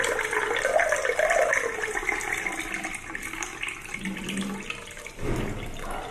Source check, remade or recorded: recorded